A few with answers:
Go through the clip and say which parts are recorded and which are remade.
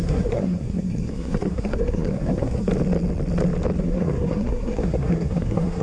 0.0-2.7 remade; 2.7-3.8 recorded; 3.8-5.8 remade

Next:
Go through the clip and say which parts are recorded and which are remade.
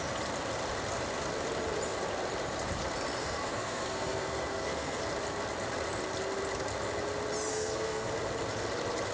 0.0-3.2 recorded; 3.2-5.0 remade; 5.0-7.5 recorded; 7.5-8.1 remade; 8.1-9.1 recorded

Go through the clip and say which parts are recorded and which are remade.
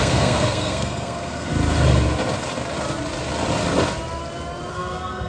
0.0-1.5 remade; 1.5-4.7 recorded; 4.7-5.3 remade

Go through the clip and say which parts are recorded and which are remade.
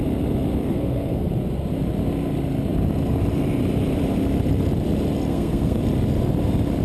0.0-0.6 recorded; 0.6-1.3 remade; 1.3-5.3 recorded; 5.3-5.8 remade; 5.8-6.8 recorded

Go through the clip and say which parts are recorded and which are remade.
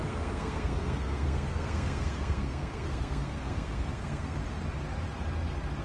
0.0-4.4 remade; 4.4-5.8 recorded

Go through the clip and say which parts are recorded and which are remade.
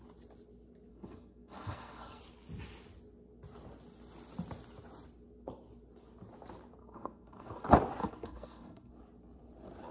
0.0-0.9 recorded; 0.9-2.2 remade; 2.2-6.8 recorded; 6.8-7.6 remade; 7.6-8.0 recorded; 8.0-8.9 remade; 8.9-9.9 recorded